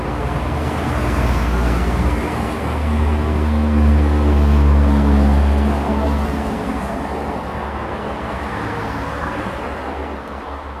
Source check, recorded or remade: remade